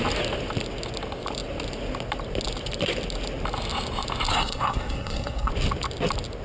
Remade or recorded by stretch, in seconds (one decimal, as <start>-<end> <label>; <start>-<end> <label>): 0.0-4.3 recorded; 4.3-5.5 remade; 5.5-6.4 recorded